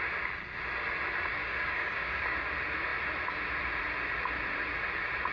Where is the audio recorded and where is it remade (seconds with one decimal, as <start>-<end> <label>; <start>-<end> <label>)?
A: 0.0-1.3 recorded; 1.3-2.5 remade; 2.5-5.3 recorded